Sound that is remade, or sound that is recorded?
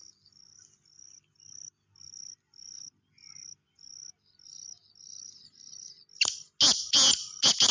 recorded